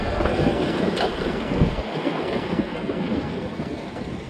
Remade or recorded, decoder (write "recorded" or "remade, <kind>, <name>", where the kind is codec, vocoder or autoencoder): remade, codec, SNAC